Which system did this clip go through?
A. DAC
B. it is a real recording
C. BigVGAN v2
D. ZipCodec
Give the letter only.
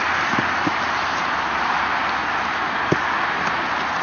B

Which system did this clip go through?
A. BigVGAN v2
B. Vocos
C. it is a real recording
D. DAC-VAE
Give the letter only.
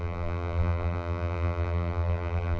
A